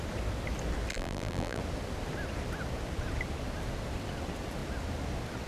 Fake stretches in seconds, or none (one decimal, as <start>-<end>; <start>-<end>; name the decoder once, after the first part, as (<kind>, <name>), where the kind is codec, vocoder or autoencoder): 0.9-1.6 (vocoder, BigVGAN v2)